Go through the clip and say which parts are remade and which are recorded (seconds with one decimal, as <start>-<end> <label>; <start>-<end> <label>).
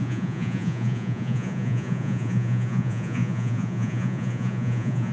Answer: 0.0-5.1 remade